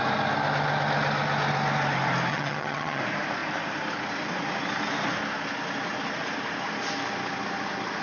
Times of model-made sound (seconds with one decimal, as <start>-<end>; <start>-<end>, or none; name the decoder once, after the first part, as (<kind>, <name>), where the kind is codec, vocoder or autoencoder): 2.3-3.0 (vocoder, HiFi-GAN)